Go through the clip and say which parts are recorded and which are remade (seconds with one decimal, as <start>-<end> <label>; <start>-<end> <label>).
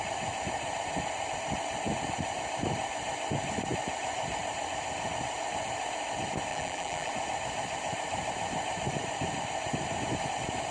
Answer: 0.0-6.5 recorded; 6.5-7.1 remade; 7.1-10.7 recorded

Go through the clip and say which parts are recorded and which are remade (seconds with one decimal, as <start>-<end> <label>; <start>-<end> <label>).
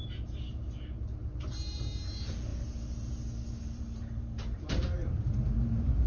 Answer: 0.0-2.5 remade; 2.5-3.6 recorded; 3.6-6.1 remade